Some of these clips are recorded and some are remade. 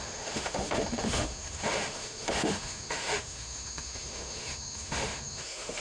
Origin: remade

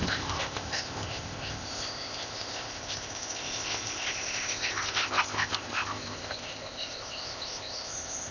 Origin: remade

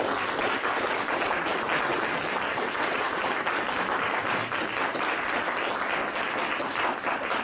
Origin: recorded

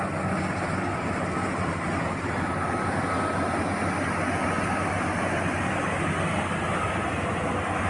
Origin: recorded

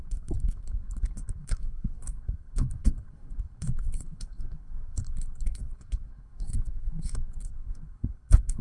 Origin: remade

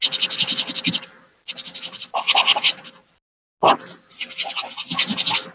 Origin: recorded